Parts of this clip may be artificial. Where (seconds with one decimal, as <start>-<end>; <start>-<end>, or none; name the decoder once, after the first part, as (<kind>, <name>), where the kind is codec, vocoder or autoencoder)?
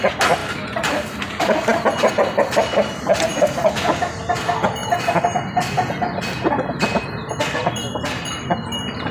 none